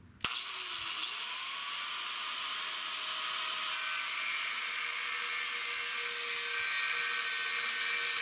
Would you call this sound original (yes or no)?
yes